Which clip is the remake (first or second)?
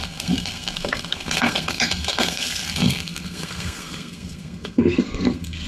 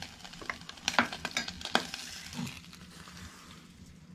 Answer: first